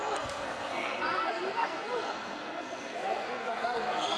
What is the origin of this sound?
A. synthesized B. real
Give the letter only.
A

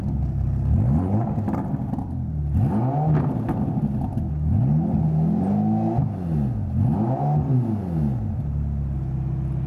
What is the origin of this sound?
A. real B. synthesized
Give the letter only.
A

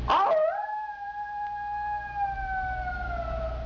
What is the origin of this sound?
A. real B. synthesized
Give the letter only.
A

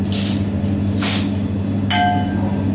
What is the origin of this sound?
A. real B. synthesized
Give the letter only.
A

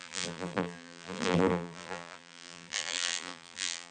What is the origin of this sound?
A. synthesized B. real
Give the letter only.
A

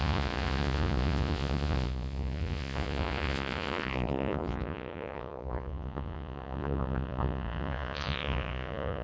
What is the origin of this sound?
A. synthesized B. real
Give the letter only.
A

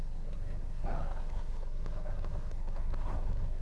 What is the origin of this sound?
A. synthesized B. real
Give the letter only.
A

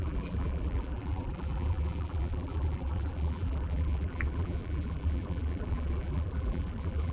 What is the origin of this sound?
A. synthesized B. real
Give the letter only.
A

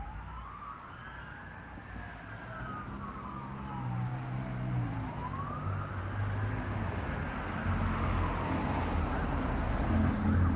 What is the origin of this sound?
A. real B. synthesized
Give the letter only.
A